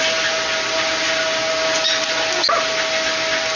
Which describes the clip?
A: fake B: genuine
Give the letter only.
B